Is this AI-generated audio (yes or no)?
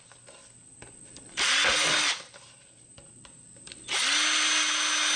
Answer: no